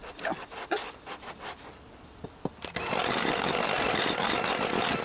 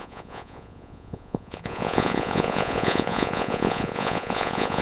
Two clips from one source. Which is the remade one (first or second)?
second